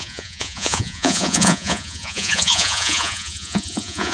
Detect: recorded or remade remade